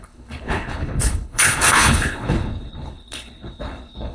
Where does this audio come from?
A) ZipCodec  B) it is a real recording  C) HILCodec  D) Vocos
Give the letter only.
C